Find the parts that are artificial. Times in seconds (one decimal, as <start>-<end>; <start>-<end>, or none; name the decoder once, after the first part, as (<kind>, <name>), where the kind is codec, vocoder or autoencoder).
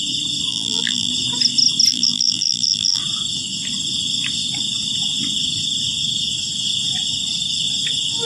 0.5-1.1 (vocoder, BigVGAN v2); 1.9-3.0